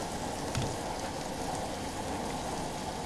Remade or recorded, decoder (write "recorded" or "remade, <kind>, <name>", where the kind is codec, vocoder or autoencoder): recorded